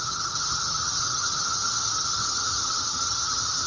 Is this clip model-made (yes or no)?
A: yes